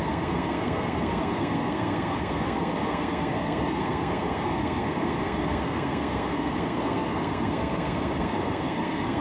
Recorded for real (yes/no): no